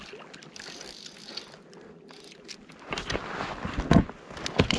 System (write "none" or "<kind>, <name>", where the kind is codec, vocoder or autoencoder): none